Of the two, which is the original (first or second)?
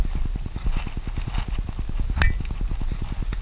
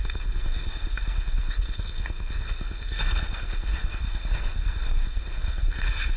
first